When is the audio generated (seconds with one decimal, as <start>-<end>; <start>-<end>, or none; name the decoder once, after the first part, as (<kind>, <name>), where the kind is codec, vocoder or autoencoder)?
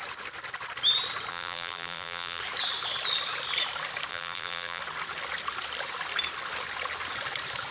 1.3-2.4 (vocoder, BigVGAN v2); 4.1-4.8